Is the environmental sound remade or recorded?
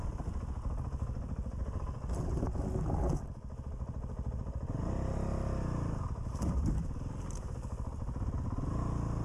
recorded